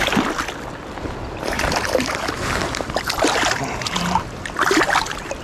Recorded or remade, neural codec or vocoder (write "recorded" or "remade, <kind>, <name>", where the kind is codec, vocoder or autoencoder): recorded